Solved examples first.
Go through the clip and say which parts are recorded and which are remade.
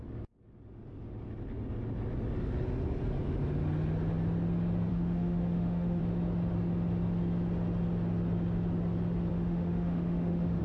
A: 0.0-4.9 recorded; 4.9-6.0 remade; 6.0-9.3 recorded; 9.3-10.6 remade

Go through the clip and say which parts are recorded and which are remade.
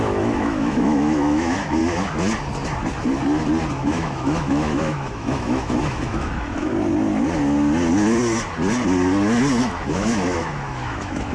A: 0.0-1.8 remade; 1.8-3.7 recorded; 3.7-6.7 remade; 6.7-9.6 recorded; 9.6-11.3 remade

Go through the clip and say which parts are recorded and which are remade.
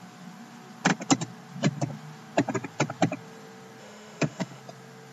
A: 0.0-3.8 recorded; 3.8-4.6 remade; 4.6-5.1 recorded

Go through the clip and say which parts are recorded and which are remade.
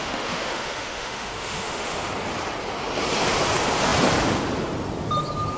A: 0.0-2.1 remade; 2.1-5.6 recorded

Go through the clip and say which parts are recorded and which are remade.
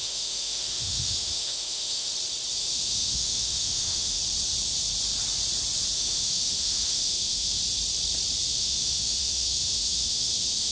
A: 0.0-2.1 remade; 2.1-2.6 recorded; 2.6-4.2 remade; 4.2-5.9 recorded; 5.9-7.6 remade; 7.6-8.5 recorded; 8.5-10.7 remade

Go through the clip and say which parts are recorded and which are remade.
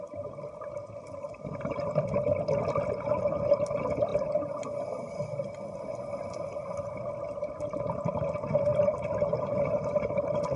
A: 0.0-10.6 recorded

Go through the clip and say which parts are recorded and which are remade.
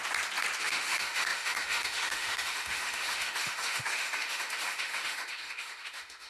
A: 0.0-0.6 recorded; 0.6-6.3 remade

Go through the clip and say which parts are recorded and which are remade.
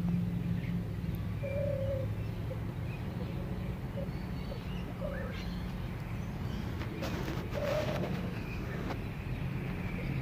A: 0.0-7.7 recorded; 7.7-8.9 remade; 8.9-10.2 recorded